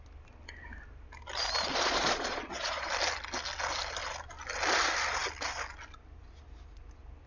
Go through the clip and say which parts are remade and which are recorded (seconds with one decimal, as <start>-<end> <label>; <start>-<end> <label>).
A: 0.0-1.7 recorded; 1.7-2.9 remade; 2.9-7.3 recorded